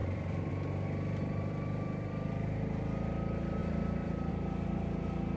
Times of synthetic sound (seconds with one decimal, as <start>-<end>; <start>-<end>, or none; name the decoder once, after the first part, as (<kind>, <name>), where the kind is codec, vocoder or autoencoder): 0.0-0.5 (vocoder, BigVGAN v2); 1.2-2.3; 3.6-4.3